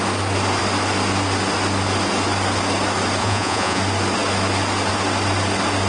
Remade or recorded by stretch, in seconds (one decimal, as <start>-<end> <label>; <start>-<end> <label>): 0.0-3.2 recorded; 3.2-3.8 remade; 3.8-5.9 recorded